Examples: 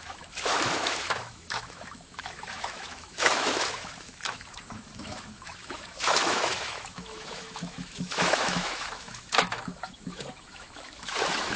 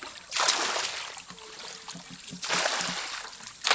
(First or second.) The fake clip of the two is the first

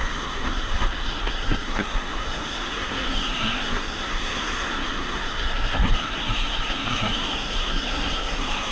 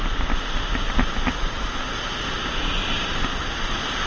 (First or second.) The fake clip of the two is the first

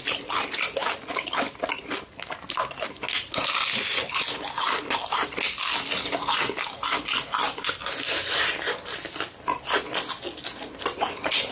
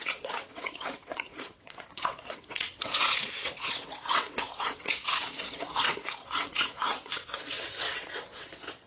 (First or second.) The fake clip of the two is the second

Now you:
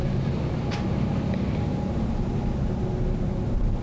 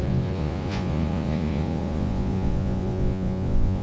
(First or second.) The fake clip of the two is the second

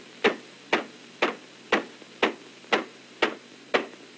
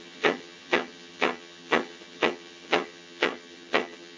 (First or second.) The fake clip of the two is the second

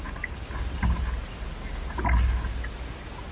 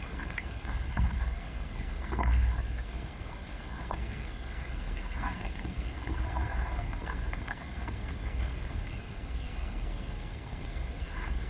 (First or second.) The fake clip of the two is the second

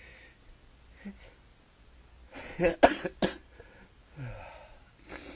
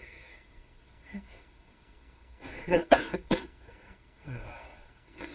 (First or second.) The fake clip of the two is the second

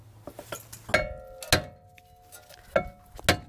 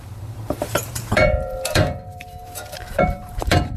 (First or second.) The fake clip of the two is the second